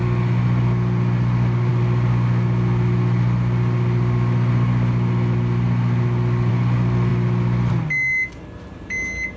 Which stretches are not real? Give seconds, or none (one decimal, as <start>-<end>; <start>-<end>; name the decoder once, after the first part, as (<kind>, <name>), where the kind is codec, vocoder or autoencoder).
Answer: none

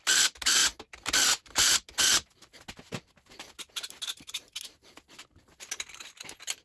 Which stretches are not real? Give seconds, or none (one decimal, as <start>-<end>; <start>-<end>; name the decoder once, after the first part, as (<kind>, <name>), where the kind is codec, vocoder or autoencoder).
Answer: none

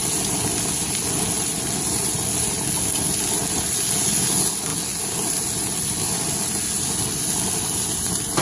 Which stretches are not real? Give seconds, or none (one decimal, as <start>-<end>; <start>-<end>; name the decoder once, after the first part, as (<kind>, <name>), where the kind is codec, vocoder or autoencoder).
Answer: none

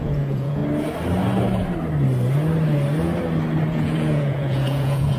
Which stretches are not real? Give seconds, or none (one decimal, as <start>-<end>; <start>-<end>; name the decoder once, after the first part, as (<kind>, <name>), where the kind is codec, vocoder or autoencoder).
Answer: 0.0-0.6 (vocoder, Vocos); 3.7-5.2

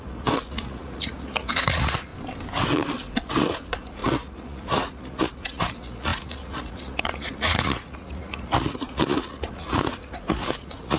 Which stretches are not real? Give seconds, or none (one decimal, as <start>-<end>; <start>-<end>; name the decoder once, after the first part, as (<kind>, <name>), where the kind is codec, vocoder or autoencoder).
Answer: 0.0-2.1 (vocoder, Vocos); 3.2-11.0

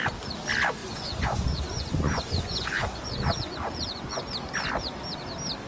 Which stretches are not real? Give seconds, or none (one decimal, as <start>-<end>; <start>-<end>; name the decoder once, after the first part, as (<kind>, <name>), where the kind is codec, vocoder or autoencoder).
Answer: 0.8-4.2 (vocoder, Vocos)

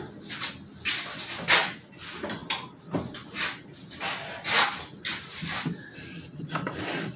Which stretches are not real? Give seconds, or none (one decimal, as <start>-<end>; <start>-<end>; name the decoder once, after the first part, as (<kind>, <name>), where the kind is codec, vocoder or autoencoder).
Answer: none

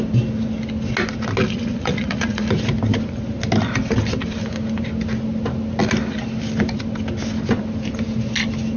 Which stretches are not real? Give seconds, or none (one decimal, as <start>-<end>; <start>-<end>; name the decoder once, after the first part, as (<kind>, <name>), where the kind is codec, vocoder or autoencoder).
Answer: 1.4-2.5 (vocoder, Vocos)